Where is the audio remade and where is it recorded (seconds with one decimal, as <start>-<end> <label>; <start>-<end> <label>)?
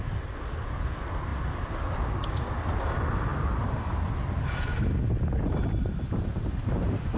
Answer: 0.0-7.2 recorded